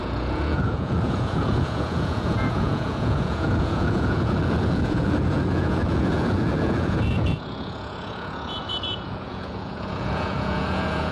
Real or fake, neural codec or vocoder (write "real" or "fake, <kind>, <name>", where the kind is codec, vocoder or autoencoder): fake, vocoder, Vocos